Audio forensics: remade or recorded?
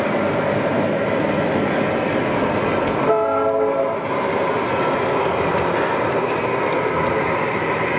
recorded